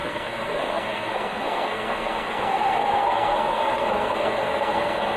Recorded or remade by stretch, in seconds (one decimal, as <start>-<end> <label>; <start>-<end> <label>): 0.0-5.2 remade